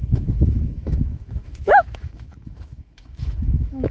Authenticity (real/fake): fake